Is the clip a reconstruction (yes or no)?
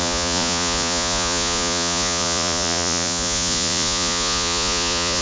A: yes